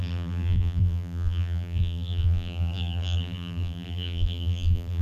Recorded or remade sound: remade